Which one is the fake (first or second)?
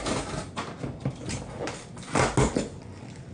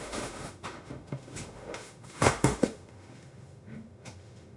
second